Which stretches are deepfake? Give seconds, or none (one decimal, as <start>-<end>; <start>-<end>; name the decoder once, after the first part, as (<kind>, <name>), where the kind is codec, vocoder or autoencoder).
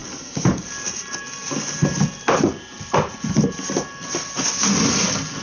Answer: none